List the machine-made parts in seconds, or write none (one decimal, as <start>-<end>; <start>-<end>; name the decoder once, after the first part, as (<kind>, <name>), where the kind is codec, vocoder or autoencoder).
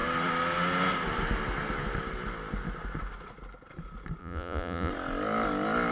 4.2-4.9 (vocoder, Vocos)